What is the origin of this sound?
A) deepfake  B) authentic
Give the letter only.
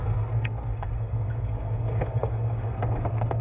A